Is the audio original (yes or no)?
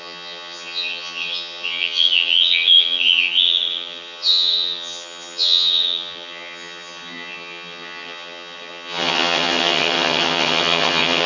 no